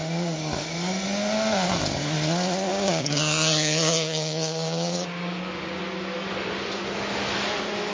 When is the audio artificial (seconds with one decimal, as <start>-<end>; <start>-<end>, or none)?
2.7-5.8